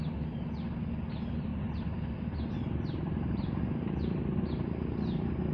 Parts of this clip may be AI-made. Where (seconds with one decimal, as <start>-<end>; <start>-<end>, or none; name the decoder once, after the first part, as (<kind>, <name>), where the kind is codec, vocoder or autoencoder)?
none